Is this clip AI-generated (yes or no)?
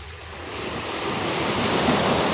no